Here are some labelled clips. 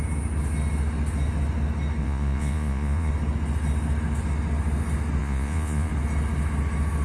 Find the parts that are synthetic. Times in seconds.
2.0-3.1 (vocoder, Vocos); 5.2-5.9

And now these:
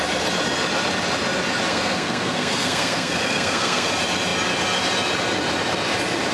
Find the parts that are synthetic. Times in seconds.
1.7-3.9 (codec, SNAC)